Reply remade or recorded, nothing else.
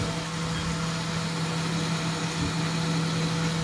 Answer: recorded